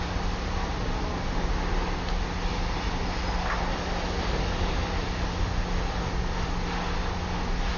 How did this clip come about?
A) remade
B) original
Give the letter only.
B